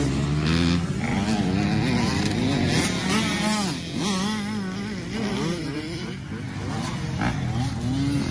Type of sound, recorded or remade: recorded